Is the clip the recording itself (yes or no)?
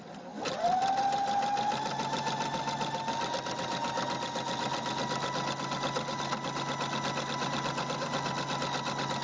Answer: yes